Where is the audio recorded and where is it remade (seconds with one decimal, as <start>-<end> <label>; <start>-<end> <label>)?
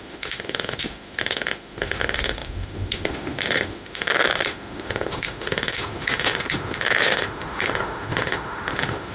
0.0-9.1 remade